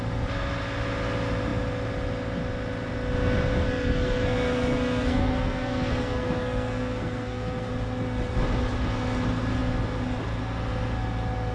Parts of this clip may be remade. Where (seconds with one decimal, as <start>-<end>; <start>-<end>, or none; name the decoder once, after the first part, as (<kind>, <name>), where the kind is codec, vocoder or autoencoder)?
3.5-7.7 (codec, SNAC)